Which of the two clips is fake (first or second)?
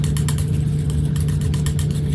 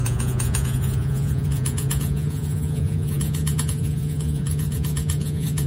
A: second